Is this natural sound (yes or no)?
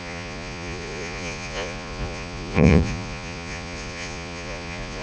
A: no